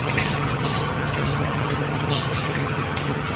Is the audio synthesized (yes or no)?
yes